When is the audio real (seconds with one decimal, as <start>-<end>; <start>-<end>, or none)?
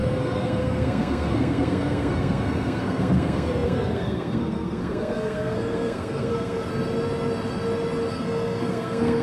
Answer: 6.7-8.1